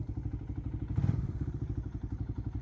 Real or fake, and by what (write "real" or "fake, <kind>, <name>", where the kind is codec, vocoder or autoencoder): fake, vocoder, BigVGAN v2